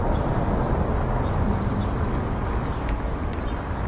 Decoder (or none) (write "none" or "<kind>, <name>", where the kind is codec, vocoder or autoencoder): none